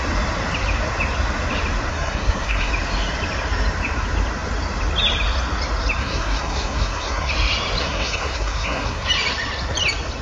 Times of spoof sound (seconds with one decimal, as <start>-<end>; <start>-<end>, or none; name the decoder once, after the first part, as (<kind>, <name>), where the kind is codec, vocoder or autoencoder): 1.9-2.7 (codec, SNAC); 6.0-7.3; 7.8-9.1